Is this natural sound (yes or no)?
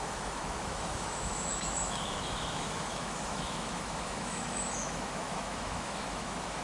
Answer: no